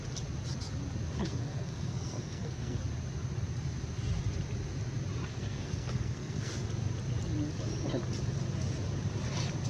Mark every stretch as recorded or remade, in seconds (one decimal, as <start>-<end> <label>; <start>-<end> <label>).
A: 0.0-1.2 recorded; 1.2-2.8 remade; 2.8-5.2 recorded; 5.2-6.5 remade; 6.5-9.7 recorded